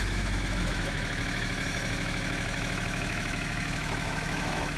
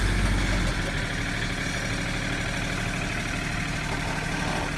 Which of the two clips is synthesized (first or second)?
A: first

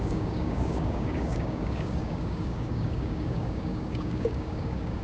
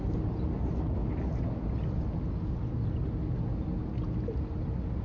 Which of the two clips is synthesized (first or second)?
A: first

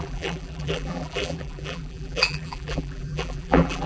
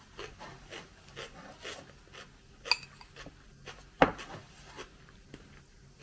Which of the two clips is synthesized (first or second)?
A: first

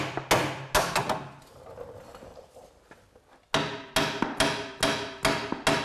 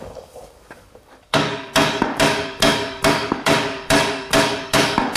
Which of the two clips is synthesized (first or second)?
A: second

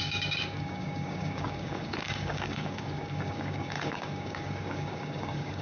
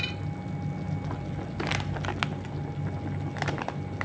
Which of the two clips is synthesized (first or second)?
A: first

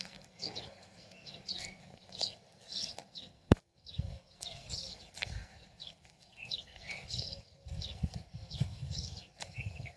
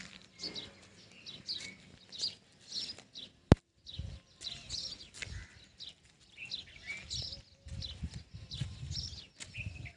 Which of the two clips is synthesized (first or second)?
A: first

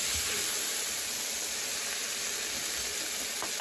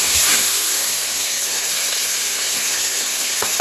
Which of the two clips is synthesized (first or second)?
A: second